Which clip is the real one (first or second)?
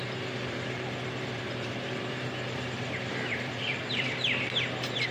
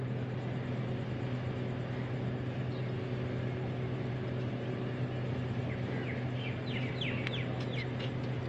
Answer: second